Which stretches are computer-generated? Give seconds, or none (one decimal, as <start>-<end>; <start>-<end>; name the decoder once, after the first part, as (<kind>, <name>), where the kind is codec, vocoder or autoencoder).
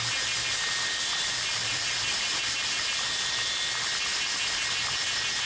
1.6-3.0 (vocoder, BigVGAN v2)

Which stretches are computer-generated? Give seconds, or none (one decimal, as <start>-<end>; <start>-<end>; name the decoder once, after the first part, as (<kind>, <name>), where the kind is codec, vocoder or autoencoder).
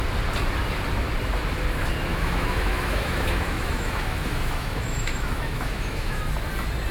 2.1-6.2 (autoencoder, DAC-VAE)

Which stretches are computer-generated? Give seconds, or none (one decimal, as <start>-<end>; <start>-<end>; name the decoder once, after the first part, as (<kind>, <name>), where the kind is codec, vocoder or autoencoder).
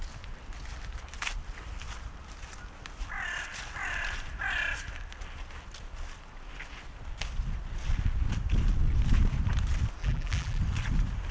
10.0-10.6 (vocoder, BigVGAN v2)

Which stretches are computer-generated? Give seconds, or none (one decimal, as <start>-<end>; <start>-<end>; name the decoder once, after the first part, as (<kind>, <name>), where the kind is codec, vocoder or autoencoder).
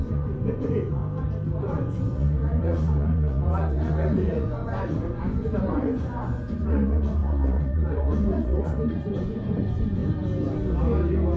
0.0-1.0 (vocoder, Vocos); 1.6-10.0